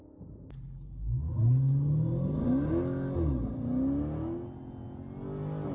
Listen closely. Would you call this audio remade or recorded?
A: recorded